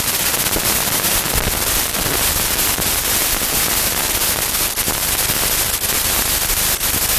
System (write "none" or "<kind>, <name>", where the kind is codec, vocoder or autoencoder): none